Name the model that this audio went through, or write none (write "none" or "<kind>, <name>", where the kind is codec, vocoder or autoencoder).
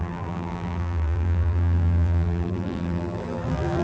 vocoder, BigVGAN v2